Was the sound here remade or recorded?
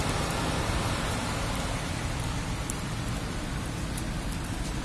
recorded